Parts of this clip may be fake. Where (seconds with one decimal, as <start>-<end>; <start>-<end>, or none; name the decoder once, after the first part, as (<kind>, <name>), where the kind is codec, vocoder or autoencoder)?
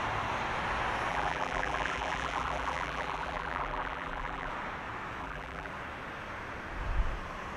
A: 1.1-4.5 (vocoder, BigVGAN v2); 5.2-5.7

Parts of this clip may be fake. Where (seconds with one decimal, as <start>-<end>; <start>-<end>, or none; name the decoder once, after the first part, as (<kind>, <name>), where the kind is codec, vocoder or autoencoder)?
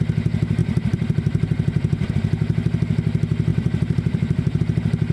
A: 0.6-2.1 (vocoder, BigVGAN v2); 3.5-4.6